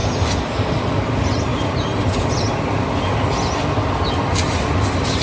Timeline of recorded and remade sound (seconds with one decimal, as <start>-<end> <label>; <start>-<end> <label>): 0.0-5.2 recorded